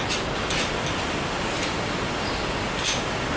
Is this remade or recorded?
recorded